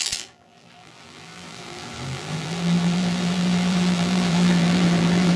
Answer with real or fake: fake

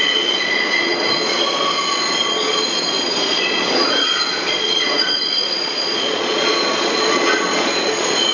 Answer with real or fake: fake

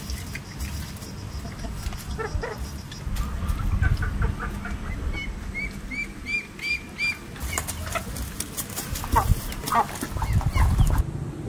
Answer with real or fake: real